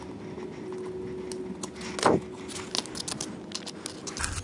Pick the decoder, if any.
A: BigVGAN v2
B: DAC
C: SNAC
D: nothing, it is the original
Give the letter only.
D